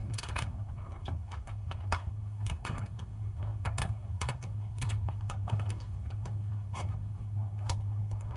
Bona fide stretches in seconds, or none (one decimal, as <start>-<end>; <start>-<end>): none